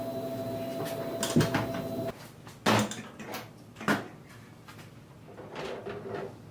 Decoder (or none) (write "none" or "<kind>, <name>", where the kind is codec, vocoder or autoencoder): none